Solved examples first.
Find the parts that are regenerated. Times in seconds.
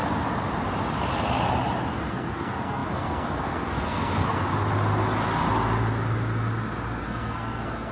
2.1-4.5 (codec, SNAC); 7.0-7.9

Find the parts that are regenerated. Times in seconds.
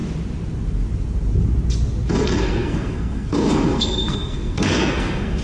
2.1-5.4 (codec, SNAC)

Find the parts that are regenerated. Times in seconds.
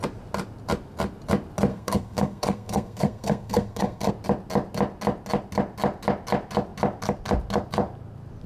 1.7-4.1 (codec, SNAC)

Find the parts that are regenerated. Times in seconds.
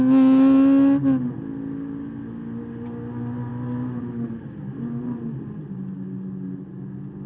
none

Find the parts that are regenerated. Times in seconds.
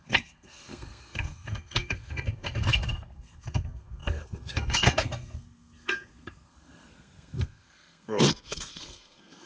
0.0-9.5 (codec, SNAC)